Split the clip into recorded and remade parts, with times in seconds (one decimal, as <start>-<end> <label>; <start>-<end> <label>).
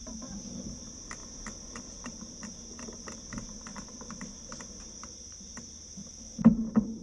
0.0-1.2 remade; 1.2-1.8 recorded; 1.8-6.0 remade; 6.0-7.0 recorded